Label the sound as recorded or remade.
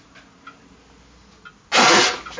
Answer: recorded